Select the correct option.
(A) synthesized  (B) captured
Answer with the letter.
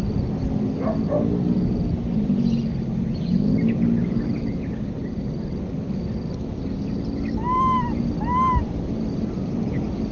B